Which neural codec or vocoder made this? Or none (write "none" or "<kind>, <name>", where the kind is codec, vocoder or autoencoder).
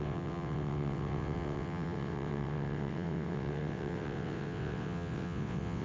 vocoder, WaveNeXt